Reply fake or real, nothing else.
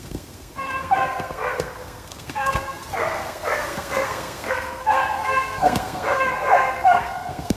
fake